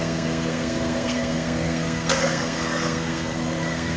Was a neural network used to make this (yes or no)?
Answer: yes